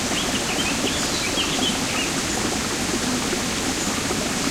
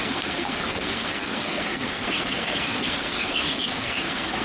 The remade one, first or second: second